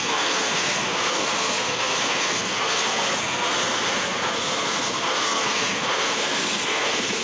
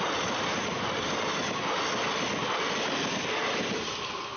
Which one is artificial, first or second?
first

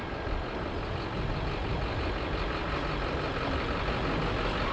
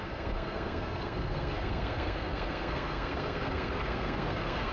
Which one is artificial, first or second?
second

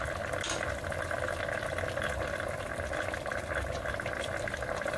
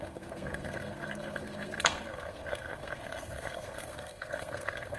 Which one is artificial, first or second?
second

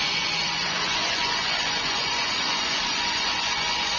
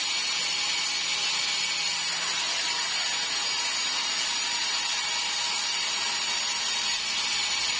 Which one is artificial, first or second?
first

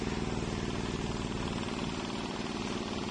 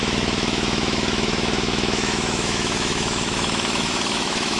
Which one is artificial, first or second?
second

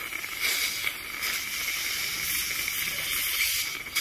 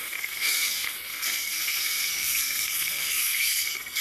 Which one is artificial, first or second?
second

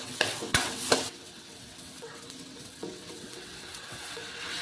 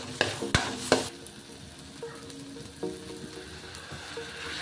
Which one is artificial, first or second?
first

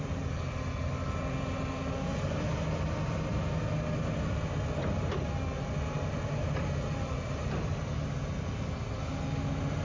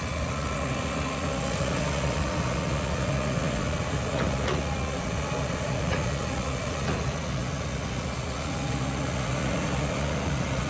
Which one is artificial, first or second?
second